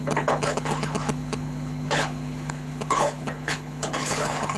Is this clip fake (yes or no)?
yes